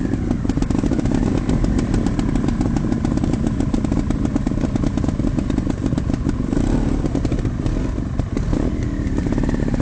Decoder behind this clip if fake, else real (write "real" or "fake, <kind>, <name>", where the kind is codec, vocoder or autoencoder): real